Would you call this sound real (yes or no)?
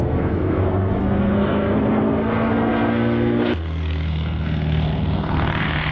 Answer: no